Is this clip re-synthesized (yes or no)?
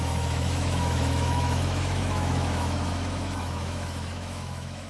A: yes